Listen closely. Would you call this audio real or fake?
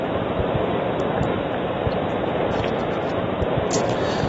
fake